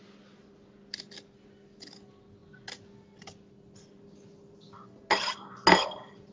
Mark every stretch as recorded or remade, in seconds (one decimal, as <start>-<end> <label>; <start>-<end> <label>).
0.0-6.3 recorded